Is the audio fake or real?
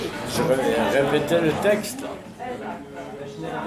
real